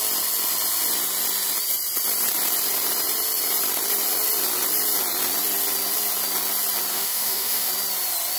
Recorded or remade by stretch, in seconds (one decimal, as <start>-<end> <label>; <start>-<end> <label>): 0.0-6.9 recorded; 6.9-7.7 remade; 7.7-8.4 recorded

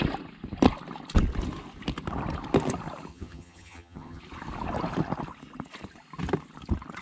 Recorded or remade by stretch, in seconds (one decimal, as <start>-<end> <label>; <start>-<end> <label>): 0.0-3.1 recorded; 3.1-4.2 remade; 4.2-7.0 recorded

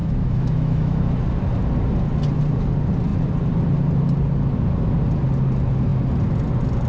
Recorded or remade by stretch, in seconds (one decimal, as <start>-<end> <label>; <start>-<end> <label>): 0.0-1.0 remade; 1.0-6.9 recorded

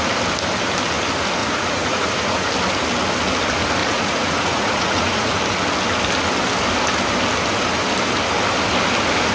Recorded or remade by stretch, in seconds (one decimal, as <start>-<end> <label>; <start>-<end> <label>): 0.0-1.4 recorded; 1.4-2.5 remade; 2.5-3.8 recorded; 3.8-5.4 remade; 5.4-9.3 recorded

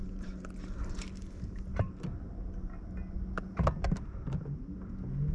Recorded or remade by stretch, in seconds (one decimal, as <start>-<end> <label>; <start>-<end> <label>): 0.0-5.3 recorded